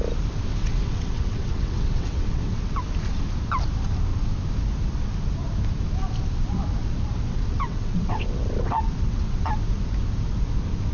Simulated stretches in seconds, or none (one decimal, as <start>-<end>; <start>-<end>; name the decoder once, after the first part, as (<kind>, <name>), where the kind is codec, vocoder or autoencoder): 0.5-2.7 (vocoder, WaveNeXt); 7.3-9.5